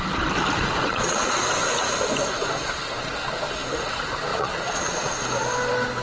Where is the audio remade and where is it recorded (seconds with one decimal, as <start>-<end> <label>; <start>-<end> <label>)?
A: 0.0-0.9 recorded; 0.9-1.4 remade; 1.4-4.3 recorded; 4.3-5.1 remade; 5.1-6.0 recorded